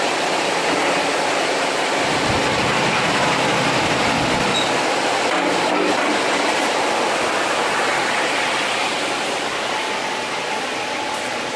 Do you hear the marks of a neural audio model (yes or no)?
no